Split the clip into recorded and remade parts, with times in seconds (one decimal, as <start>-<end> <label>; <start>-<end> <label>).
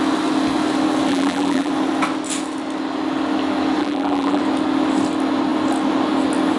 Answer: 0.0-1.1 recorded; 1.1-1.7 remade; 1.7-3.8 recorded; 3.8-4.4 remade; 4.4-6.6 recorded